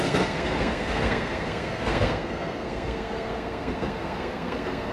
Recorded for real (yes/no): no